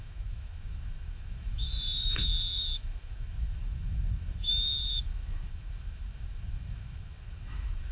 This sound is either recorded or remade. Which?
remade